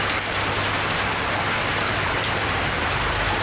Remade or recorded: recorded